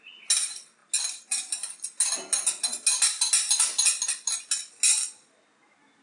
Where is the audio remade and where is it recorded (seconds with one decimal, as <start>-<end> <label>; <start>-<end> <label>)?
0.0-6.0 recorded